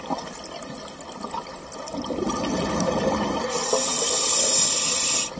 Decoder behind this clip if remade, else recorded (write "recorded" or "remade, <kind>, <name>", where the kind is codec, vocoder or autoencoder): recorded